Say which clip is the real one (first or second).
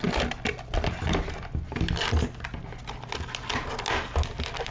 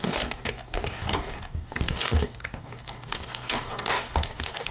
first